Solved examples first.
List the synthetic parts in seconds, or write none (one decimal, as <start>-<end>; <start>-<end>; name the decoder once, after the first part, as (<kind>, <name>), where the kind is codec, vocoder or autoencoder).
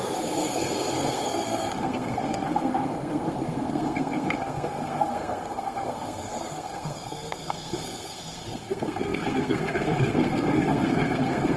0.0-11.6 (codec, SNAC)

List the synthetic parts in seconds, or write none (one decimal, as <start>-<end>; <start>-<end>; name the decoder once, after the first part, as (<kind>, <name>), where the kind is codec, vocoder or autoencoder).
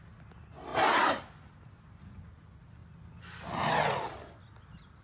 none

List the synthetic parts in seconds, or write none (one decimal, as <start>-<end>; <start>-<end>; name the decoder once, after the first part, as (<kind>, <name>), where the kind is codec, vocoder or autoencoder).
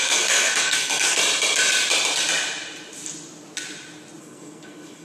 0.0-1.2 (codec, SNAC); 4.2-5.0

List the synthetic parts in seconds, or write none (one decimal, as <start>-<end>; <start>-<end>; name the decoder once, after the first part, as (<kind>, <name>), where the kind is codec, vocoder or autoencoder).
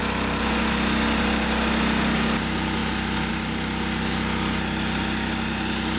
none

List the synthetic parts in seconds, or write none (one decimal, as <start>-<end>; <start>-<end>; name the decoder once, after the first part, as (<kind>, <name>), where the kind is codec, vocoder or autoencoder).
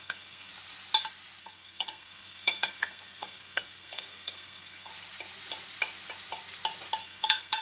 0.0-0.5 (codec, SNAC); 1.4-4.9; 7.0-7.6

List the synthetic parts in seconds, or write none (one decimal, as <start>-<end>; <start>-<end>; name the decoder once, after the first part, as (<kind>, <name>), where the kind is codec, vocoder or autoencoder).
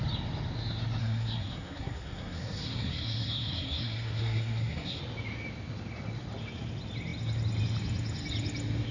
1.0-5.0 (codec, SNAC)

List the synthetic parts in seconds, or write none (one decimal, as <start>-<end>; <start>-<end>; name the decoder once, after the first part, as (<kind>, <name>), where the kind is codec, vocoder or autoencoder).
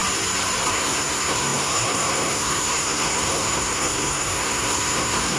0.7-5.4 (codec, SNAC)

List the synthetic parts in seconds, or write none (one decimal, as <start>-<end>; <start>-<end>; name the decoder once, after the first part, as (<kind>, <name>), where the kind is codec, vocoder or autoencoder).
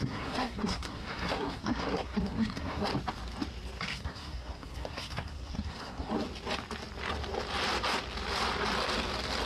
0.0-2.9 (codec, SNAC); 3.8-6.1